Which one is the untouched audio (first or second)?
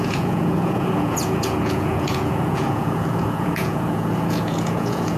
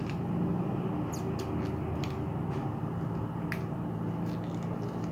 second